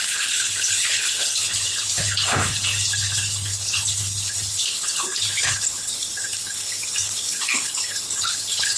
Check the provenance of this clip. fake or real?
fake